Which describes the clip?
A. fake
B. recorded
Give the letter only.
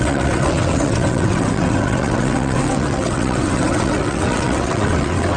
A